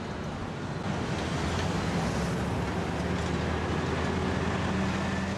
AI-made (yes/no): no